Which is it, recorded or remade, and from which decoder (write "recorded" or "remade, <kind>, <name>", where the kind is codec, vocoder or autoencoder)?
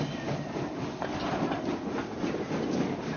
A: recorded